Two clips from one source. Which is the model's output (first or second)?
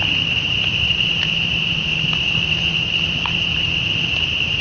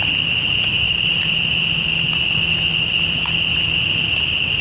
first